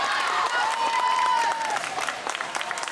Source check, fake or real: fake